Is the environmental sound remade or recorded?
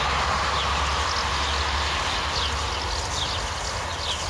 recorded